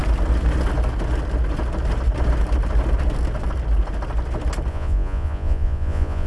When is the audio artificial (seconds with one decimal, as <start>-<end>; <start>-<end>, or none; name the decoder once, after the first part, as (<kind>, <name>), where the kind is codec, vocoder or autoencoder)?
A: 4.7-6.3 (vocoder, Vocos)